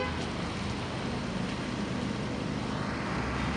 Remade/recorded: recorded